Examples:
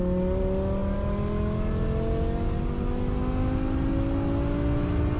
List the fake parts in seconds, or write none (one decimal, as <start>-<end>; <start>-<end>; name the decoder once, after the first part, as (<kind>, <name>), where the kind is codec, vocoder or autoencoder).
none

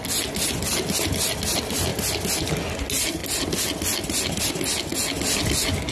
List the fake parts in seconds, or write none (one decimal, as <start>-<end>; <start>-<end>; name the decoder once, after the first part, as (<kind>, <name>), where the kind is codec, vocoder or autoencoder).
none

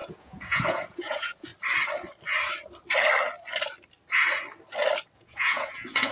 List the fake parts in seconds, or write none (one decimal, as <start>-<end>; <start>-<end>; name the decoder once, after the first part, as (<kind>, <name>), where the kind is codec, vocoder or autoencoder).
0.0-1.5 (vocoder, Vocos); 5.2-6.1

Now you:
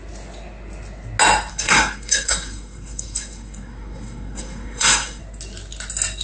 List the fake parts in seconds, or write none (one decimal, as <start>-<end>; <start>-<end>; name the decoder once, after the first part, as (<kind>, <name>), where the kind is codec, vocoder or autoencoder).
1.5-5.2 (codec, SNAC)